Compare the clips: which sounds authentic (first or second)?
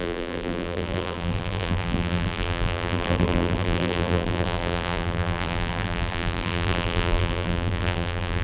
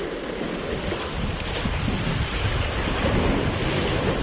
second